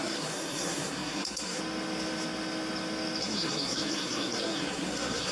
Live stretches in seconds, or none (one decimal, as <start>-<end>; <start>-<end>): 1.6-3.2